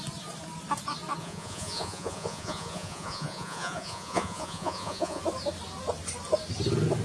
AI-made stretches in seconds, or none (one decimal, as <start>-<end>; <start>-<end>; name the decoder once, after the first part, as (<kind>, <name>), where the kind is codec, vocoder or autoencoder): 1.2-5.2 (vocoder, Vocos)